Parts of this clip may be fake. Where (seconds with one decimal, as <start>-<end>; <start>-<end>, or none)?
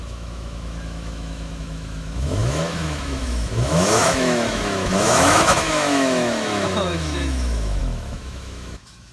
0.0-9.1